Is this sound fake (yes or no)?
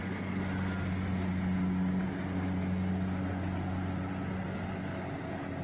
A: no